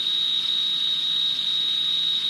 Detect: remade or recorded remade